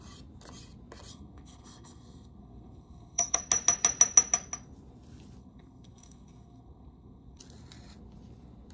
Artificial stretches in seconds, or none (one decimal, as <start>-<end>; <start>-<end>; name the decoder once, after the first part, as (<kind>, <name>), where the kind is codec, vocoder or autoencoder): 1.1-3.4 (codec, SNAC); 5.4-7.4